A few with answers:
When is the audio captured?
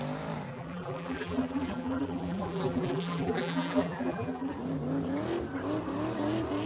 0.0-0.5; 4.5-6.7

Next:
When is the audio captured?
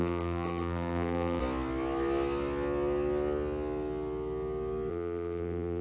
1.4-4.9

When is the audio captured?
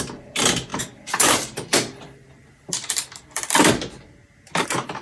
0.0-0.7; 3.7-5.0